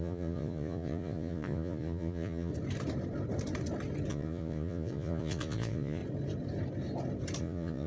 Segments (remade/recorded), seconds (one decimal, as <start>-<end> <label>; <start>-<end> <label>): 0.0-2.5 remade; 2.5-4.1 recorded; 4.1-6.0 remade; 6.0-7.4 recorded; 7.4-7.9 remade